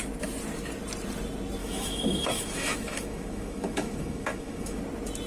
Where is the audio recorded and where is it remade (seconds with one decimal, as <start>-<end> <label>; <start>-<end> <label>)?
0.0-1.6 recorded; 1.6-4.8 remade; 4.8-5.3 recorded

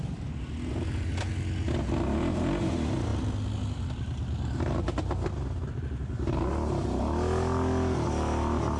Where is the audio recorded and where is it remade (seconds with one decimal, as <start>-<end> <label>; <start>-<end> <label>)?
0.0-8.8 recorded

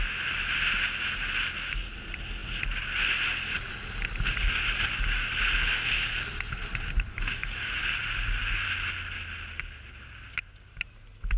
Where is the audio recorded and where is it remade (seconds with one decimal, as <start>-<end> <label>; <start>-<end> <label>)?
0.0-7.1 recorded; 7.1-7.8 remade; 7.8-11.4 recorded

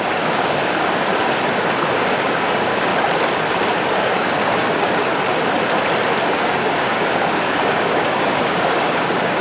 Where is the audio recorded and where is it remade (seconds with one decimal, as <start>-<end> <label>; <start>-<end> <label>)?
0.0-1.1 remade; 1.1-1.8 recorded; 1.8-2.9 remade; 2.9-3.8 recorded; 3.8-5.1 remade; 5.1-6.4 recorded; 6.4-9.4 remade

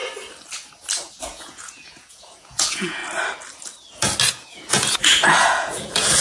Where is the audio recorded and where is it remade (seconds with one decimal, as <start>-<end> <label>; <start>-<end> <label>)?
0.0-1.1 recorded; 1.1-3.0 remade; 3.0-4.3 recorded; 4.3-6.2 remade

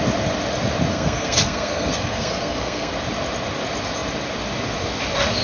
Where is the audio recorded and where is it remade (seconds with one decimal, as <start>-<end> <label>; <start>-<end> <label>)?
0.0-0.9 recorded; 0.9-2.9 remade; 2.9-5.4 recorded